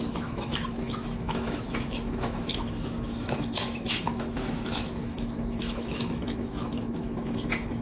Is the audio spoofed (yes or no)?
yes